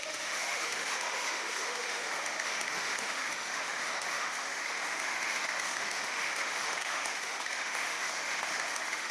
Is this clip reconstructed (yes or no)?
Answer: yes